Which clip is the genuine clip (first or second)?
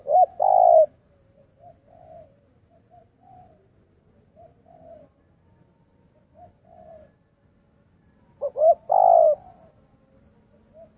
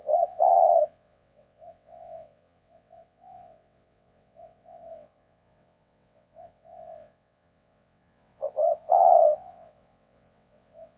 first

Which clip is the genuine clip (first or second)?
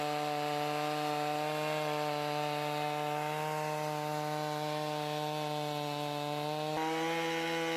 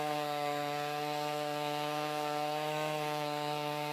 first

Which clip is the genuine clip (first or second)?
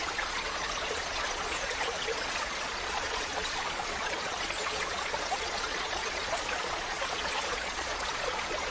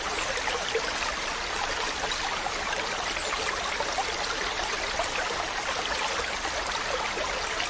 second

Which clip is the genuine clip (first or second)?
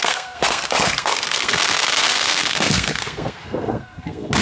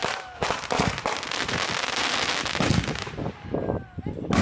second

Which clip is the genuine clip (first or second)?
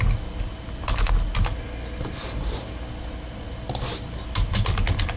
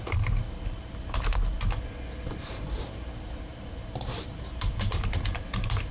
first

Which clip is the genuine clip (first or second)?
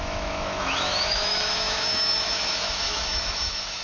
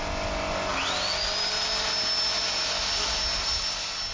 second